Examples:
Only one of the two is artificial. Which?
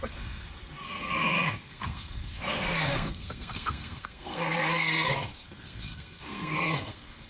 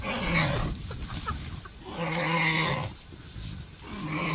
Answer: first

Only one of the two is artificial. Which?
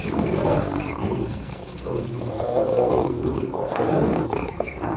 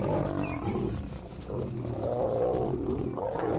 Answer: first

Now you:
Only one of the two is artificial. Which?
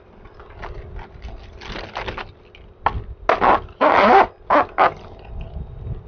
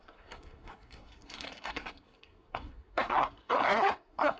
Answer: second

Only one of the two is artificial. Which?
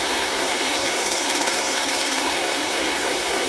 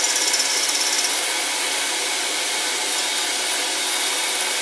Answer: first